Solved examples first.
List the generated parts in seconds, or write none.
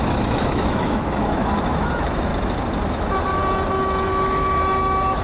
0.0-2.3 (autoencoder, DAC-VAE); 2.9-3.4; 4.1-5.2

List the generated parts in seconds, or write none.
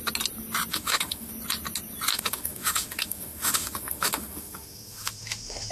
0.7-1.3 (autoencoder, DAC-VAE); 2.1-5.7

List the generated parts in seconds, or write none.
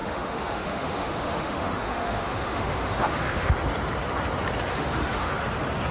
0.0-3.5 (autoencoder, DAC-VAE); 4.7-5.3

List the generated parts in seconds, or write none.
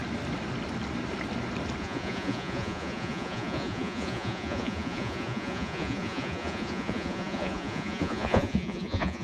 1.8-9.2 (vocoder, Vocos)